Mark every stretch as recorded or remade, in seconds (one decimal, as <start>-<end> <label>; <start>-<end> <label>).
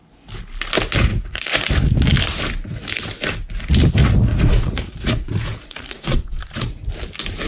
0.0-1.1 recorded; 1.1-1.7 remade; 1.7-4.0 recorded; 4.0-6.9 remade; 6.9-7.5 recorded